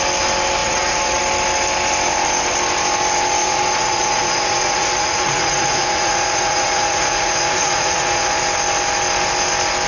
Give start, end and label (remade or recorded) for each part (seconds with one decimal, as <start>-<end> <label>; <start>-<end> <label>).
0.0-0.6 recorded; 0.6-1.2 remade; 1.2-3.4 recorded; 3.4-8.4 remade; 8.4-9.9 recorded